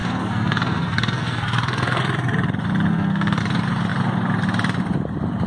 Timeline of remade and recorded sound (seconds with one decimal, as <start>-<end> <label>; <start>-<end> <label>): 0.0-2.0 remade; 2.0-2.9 recorded; 2.9-3.4 remade; 3.4-5.5 recorded